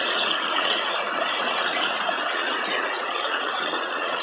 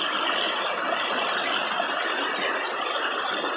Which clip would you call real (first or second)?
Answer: second